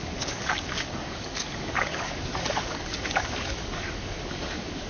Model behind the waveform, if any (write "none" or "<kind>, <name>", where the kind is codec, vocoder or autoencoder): codec, DAC